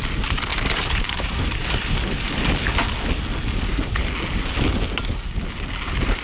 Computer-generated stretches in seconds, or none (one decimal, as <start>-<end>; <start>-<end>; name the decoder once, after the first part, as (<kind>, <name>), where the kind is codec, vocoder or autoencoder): 0.5-2.4 (vocoder, BigVGAN v2)